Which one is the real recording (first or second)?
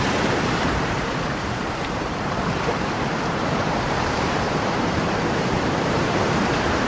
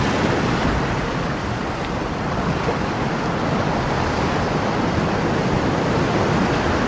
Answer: second